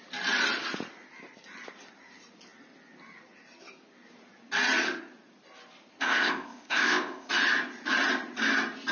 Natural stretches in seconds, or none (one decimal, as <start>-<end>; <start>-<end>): 0.0-6.0; 7.3-8.9